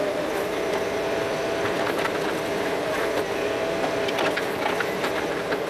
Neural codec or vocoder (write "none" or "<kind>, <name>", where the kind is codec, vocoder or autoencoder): vocoder, BigVGAN v2